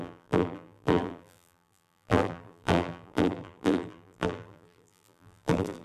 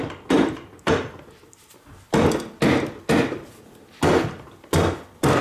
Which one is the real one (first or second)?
second